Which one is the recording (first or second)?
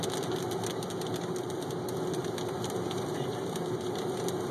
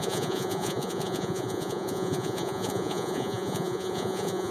first